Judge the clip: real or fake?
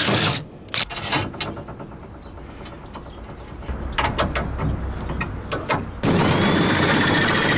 real